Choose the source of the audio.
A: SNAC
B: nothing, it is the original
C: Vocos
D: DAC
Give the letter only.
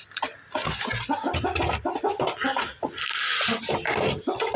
B